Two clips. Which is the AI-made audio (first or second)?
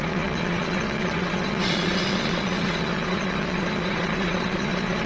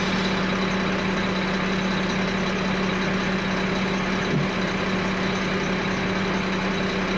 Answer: first